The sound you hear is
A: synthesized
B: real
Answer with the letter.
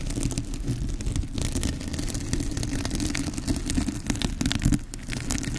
B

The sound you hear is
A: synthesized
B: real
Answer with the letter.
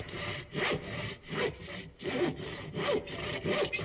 A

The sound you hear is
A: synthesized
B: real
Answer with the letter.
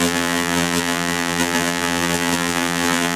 A